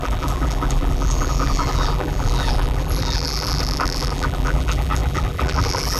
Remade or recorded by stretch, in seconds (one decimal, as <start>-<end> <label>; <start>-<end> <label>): 0.0-6.0 remade